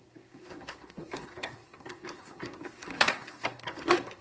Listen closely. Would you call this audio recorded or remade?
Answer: remade